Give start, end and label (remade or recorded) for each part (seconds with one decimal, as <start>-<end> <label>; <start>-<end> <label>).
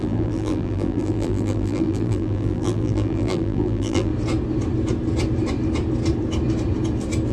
0.0-4.1 remade; 4.1-7.3 recorded